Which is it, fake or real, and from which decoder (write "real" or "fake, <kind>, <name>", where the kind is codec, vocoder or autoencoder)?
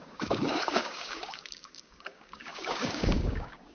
fake, codec, DAC